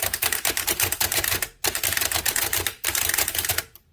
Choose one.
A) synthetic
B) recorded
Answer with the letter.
A